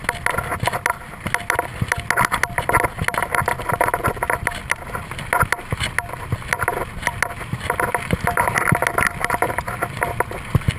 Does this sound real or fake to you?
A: real